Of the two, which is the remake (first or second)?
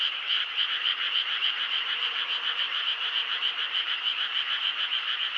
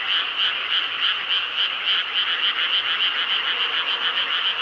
first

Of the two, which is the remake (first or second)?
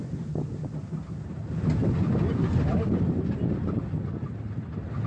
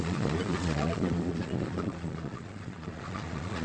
second